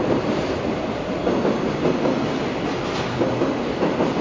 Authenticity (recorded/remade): recorded